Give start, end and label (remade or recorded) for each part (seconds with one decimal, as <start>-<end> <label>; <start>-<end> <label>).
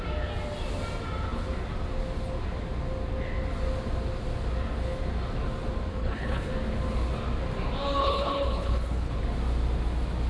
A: 0.0-5.9 recorded; 5.9-6.5 remade; 6.5-8.0 recorded; 8.0-9.1 remade; 9.1-10.3 recorded